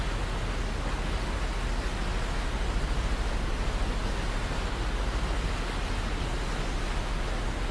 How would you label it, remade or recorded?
recorded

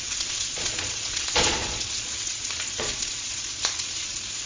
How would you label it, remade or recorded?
remade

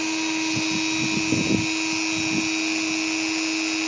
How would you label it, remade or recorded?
recorded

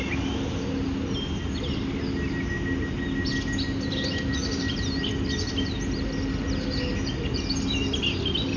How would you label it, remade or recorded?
recorded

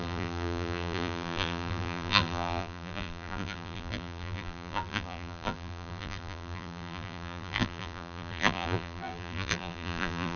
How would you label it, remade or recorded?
remade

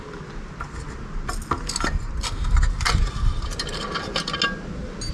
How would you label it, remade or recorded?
recorded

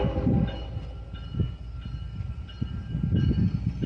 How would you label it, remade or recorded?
recorded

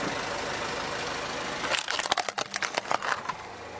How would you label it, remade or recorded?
recorded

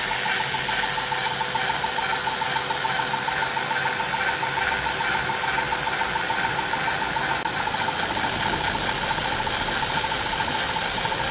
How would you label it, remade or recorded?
recorded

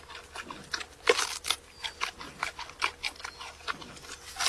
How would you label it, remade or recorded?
recorded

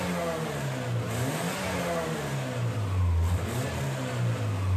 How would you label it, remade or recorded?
recorded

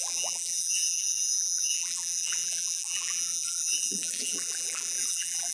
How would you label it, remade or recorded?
remade